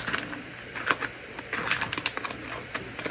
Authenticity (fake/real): real